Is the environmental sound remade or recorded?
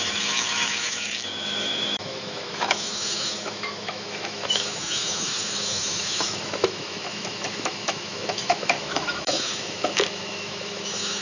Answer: remade